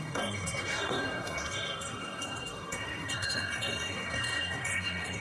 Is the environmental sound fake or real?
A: fake